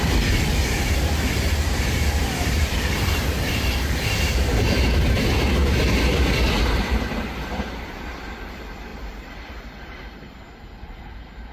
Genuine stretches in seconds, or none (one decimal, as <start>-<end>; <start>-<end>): 5.6-6.6